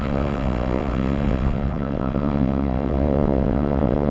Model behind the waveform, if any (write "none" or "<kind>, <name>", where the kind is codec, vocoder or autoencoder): vocoder, WaveNeXt